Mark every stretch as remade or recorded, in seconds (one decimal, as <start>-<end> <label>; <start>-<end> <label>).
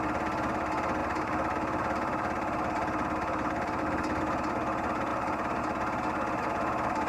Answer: 0.0-1.0 recorded; 1.0-3.8 remade; 3.8-5.1 recorded; 5.1-5.6 remade; 5.6-7.1 recorded